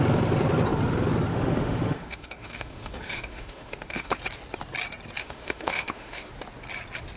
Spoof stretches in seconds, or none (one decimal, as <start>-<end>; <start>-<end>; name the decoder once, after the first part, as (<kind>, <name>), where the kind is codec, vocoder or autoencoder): 1.3-4.2 (autoencoder, DAC-VAE); 5.2-6.3

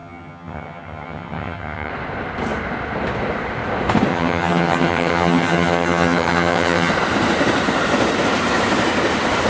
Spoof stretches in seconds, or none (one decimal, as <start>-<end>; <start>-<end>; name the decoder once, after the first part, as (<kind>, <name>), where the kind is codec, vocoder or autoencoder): 0.0-1.9 (vocoder, HiFi-GAN); 4.1-6.9

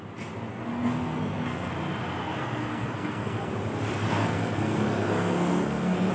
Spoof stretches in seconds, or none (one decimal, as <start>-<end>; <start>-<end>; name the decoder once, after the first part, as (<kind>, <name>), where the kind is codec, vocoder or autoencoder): 0.5-1.7 (codec, SNAC); 2.2-3.5; 3.9-6.1

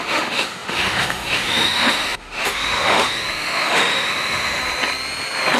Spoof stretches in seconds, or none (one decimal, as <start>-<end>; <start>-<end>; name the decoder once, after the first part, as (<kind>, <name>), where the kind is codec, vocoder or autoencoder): 0.0-4.6 (autoencoder, DAC-VAE)

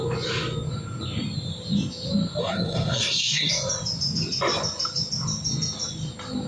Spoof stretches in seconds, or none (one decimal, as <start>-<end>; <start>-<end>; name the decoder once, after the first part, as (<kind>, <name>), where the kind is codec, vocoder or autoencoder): 2.4-3.5 (codec, SNAC)

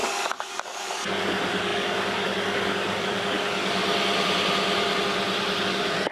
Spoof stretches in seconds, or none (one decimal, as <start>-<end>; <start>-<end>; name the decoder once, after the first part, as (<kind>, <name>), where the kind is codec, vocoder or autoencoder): 0.0-3.8 (codec, DAC); 5.6-6.1

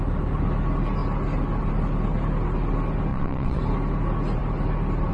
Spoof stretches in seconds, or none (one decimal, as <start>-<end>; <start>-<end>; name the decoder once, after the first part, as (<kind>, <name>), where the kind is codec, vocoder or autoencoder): 3.1-3.6 (vocoder, WaveNeXt)